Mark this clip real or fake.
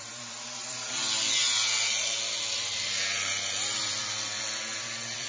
fake